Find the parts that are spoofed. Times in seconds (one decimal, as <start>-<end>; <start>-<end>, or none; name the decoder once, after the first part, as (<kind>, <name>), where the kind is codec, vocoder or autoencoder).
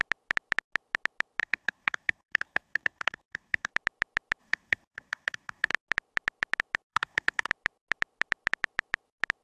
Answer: 1.4-3.7 (codec, SNAC); 4.4-5.7; 6.9-7.5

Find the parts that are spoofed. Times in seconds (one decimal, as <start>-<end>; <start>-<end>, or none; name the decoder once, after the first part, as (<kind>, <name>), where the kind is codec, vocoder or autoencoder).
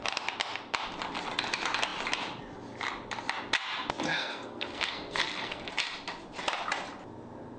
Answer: 4.1-5.7 (codec, SNAC)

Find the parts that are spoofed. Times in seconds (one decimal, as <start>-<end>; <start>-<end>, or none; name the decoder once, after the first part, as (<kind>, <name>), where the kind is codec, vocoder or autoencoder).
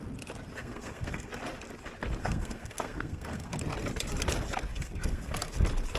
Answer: 0.6-1.3 (codec, SNAC); 2.2-3.6; 4.7-5.5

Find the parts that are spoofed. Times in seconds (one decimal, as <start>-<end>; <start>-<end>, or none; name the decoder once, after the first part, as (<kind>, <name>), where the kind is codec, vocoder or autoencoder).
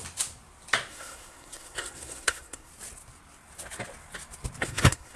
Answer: 0.9-2.7 (codec, SNAC); 4.6-5.2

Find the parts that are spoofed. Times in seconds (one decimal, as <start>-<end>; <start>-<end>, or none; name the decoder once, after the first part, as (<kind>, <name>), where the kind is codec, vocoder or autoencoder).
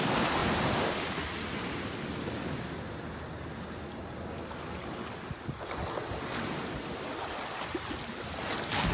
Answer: none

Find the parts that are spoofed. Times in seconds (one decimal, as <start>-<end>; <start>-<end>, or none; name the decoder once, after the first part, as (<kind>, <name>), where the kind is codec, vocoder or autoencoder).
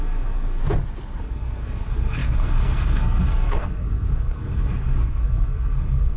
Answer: 0.0-0.6 (codec, SNAC); 1.2-6.2